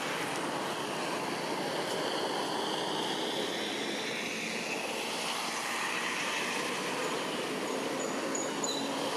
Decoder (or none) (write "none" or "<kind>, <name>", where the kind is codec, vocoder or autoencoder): none